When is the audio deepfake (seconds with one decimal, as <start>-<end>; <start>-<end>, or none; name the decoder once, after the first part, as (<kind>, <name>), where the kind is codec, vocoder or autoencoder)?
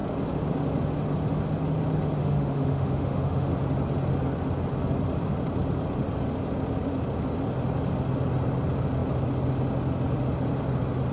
2.2-3.5 (autoencoder, DAC-VAE)